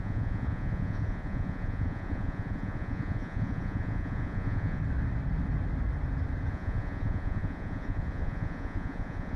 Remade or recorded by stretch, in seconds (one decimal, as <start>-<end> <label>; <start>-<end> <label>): 0.0-4.8 remade; 4.8-6.5 recorded; 6.5-9.4 remade